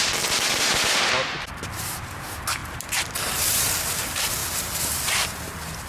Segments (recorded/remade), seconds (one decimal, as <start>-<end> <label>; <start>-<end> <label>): 0.0-0.5 recorded; 0.5-1.7 remade; 1.7-5.9 recorded